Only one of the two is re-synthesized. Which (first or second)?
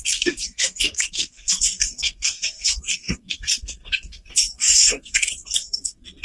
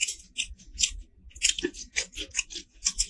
first